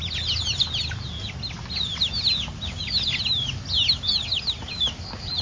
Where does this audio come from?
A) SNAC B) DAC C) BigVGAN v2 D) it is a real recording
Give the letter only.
D